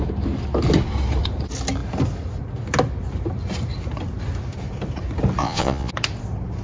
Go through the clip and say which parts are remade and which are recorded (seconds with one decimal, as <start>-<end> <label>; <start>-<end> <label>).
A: 0.0-5.4 recorded; 5.4-5.9 remade; 5.9-6.6 recorded